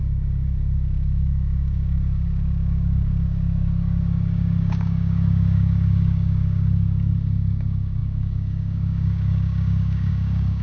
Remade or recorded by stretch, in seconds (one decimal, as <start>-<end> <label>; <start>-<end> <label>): 0.0-10.6 remade